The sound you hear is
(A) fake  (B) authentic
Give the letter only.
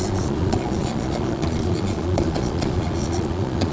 A